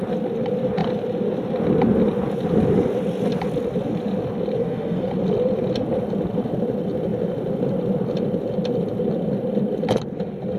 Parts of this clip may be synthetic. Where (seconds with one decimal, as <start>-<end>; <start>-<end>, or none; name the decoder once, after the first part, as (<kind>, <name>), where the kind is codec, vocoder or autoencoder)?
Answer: 4.6-5.1 (codec, SNAC)